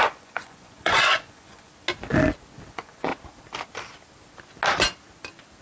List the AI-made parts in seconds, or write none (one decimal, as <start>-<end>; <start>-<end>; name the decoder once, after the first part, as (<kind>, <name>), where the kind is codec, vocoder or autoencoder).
0.0-1.7 (vocoder, Vocos); 2.7-3.1